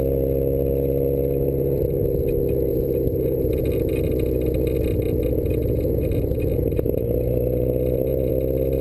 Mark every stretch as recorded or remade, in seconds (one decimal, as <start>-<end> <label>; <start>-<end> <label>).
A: 0.0-2.7 recorded; 2.7-3.9 remade; 3.9-5.6 recorded; 5.6-8.3 remade; 8.3-8.8 recorded